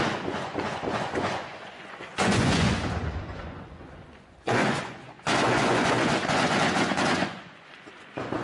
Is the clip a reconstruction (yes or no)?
yes